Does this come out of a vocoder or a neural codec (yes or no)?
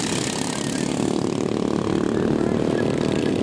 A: no